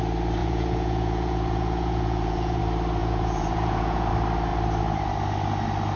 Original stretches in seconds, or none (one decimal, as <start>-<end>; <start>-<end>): 0.0-0.4; 2.6-3.0; 4.1-6.0